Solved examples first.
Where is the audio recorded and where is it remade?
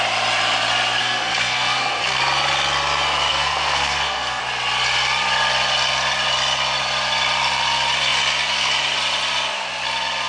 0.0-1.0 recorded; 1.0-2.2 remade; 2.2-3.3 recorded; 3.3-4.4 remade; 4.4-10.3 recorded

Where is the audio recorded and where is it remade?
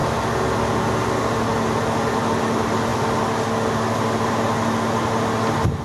0.0-5.8 recorded